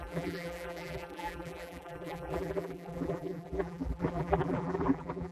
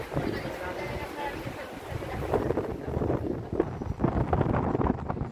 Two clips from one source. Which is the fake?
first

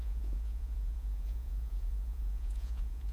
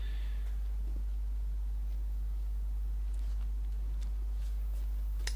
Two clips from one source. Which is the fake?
first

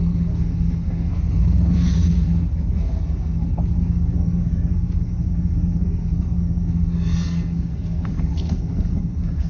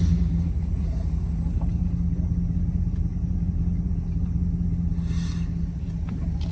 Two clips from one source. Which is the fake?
first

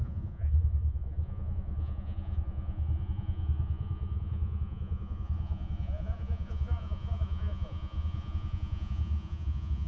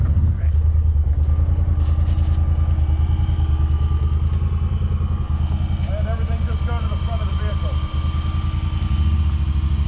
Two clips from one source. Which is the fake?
first